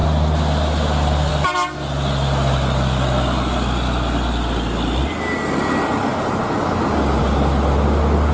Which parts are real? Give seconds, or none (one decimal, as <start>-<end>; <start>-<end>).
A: 0.0-8.3